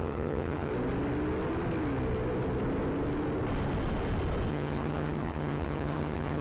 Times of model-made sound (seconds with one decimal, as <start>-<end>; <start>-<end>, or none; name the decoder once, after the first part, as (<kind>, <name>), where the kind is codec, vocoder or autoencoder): 0.0-0.7 (vocoder, HiFi-GAN); 4.5-6.4

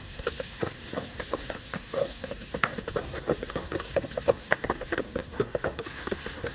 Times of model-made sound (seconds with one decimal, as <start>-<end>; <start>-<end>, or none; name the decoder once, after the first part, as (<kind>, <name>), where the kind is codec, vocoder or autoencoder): 0.0-6.5 (codec, SNAC)

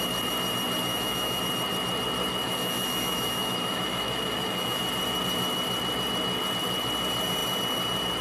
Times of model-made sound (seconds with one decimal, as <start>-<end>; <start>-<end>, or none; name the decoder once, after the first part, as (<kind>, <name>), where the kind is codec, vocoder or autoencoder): 0.9-1.4 (autoencoder, DAC-VAE); 2.4-4.8

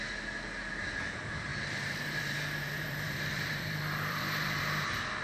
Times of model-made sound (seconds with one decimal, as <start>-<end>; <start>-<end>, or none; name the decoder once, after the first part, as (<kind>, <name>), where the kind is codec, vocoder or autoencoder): 1.5-4.6 (vocoder, BigVGAN v2)

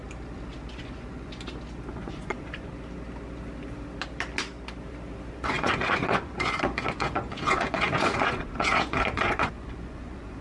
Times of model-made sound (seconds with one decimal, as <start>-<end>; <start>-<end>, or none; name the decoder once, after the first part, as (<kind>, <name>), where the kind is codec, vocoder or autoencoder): 0.8-1.3 (vocoder, Vocos); 1.9-2.7; 5.3-10.4

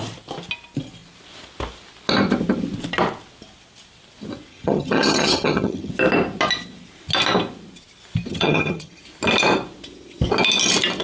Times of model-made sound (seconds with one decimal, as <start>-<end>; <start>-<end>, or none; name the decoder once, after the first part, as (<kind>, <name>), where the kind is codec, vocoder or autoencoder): 4.5-5.9 (vocoder, HiFi-GAN); 8.3-9.0